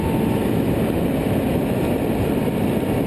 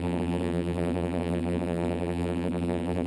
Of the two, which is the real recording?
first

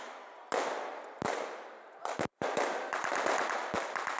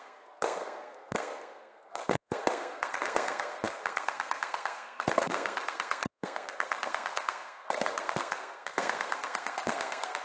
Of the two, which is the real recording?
first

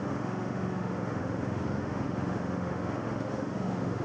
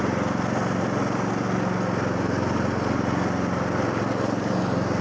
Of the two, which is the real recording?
second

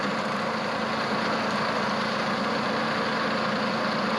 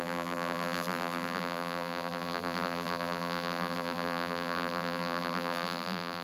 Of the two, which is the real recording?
first